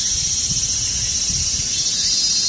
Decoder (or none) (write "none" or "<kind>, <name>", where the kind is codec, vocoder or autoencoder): none